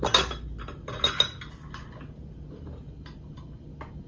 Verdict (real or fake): real